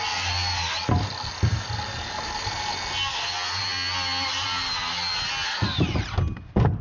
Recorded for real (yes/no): yes